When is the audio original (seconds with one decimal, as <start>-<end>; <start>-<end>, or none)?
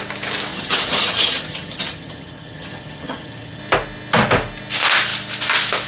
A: 0.0-0.5; 3.6-5.9